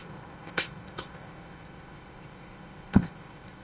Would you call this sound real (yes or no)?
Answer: no